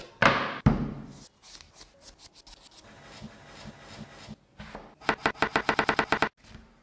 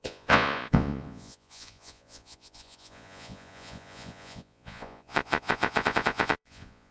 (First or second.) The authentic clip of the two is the first